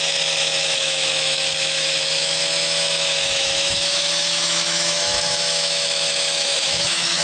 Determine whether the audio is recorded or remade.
remade